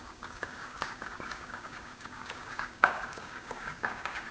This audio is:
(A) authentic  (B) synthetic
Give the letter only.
B